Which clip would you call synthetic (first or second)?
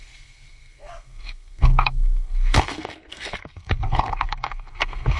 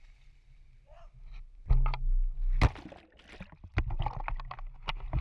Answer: first